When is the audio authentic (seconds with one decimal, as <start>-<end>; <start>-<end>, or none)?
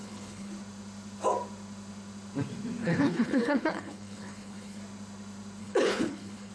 0.5-2.8; 4.8-5.6